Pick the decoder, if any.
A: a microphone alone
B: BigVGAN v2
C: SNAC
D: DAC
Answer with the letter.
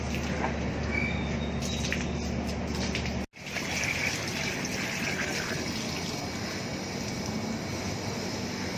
A